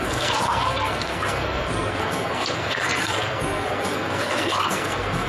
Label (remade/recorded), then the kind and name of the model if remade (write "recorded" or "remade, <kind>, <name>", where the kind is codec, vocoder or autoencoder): remade, codec, SNAC